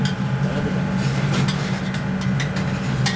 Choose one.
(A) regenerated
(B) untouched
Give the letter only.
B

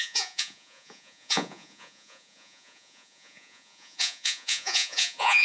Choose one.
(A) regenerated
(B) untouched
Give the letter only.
A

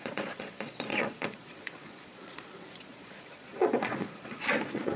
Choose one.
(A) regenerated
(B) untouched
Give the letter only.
A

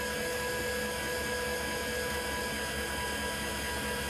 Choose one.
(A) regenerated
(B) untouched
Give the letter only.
B